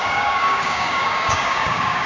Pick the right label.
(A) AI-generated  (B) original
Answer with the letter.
A